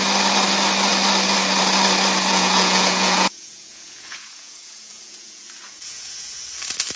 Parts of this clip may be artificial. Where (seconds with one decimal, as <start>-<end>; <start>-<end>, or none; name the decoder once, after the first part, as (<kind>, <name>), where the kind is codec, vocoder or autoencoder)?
2.3-6.5 (vocoder, Vocos)